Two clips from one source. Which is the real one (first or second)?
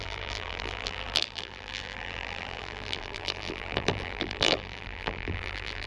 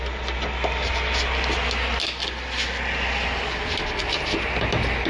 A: second